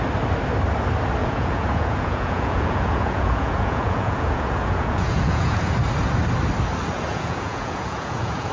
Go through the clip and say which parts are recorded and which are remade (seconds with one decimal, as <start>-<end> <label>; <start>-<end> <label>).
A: 0.0-1.2 recorded; 1.2-5.7 remade; 5.7-7.1 recorded; 7.1-8.5 remade